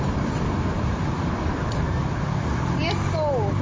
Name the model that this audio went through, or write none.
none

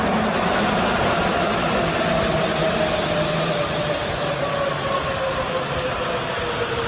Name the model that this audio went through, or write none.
none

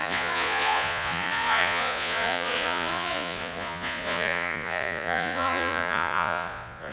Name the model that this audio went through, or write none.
vocoder, Vocos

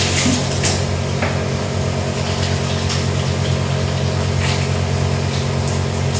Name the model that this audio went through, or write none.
none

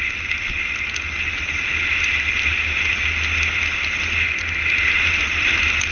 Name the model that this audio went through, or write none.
none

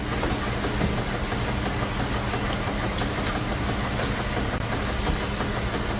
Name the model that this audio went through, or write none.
none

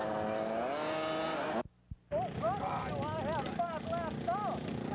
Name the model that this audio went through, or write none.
none